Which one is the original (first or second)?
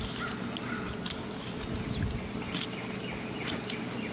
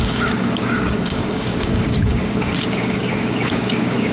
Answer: first